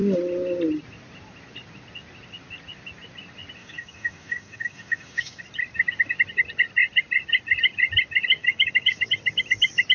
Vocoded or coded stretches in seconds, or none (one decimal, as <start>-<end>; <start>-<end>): 3.6-5.4; 8.4-9.1